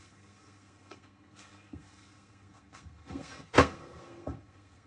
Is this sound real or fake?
fake